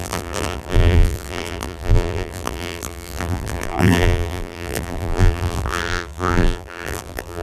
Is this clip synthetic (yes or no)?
yes